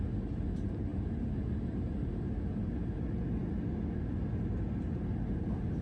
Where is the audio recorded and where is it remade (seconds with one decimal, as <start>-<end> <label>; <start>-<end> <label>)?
0.0-5.8 recorded